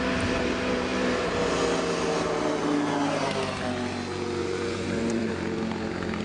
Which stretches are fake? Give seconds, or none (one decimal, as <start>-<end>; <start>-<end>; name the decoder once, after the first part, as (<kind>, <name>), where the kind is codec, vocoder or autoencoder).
4.4-5.3 (vocoder, Vocos)